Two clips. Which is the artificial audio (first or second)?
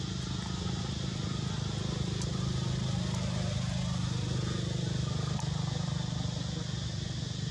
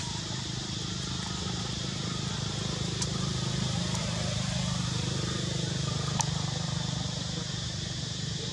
second